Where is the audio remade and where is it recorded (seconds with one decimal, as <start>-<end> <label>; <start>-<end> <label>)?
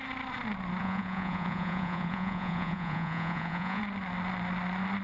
0.0-0.8 recorded; 0.8-3.8 remade; 3.8-5.0 recorded